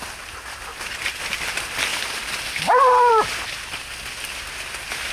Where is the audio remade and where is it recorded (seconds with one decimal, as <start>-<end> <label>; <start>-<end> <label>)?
0.0-5.1 recorded